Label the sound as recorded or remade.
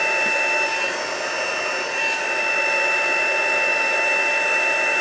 recorded